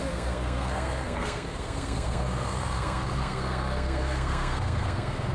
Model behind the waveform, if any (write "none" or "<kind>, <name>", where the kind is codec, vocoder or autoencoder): codec, SNAC